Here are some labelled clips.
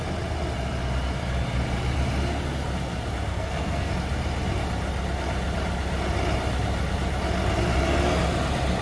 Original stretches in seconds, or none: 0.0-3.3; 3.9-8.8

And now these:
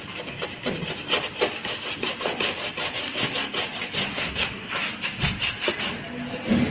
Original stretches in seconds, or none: 0.0-4.1; 4.7-6.7

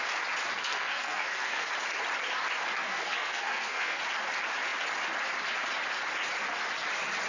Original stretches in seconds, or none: 0.0-0.6; 1.7-2.8; 4.0-7.3

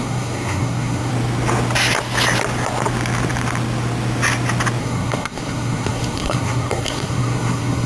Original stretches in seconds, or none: 1.1-4.8

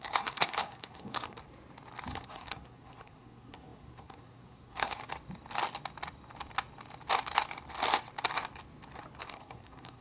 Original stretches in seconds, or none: 1.4-2.1; 5.0-9.2

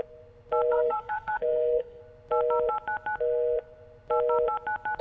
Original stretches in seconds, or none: 0.0-0.7; 2.0-5.0

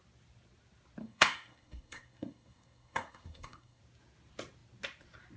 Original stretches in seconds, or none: 0.0-1.0; 3.8-5.4